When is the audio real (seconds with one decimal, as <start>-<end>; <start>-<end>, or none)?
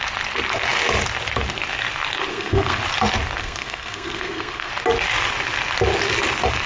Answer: 0.0-2.3; 2.8-3.4; 4.7-6.7